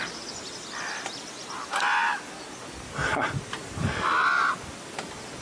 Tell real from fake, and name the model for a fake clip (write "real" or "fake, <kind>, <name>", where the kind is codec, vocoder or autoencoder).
real